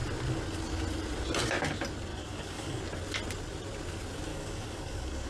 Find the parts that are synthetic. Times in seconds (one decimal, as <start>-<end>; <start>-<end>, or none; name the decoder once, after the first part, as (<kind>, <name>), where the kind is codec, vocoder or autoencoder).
2.1-2.8 (codec, DAC); 4.3-5.3